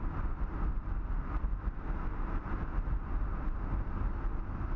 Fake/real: real